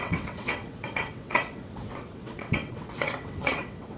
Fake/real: fake